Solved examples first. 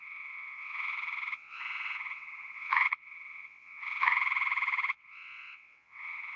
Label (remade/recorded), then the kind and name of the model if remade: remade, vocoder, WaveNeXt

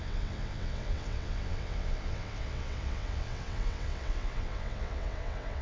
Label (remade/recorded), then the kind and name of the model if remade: remade, vocoder, WaveNeXt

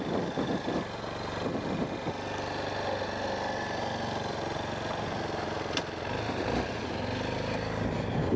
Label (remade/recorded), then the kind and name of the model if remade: recorded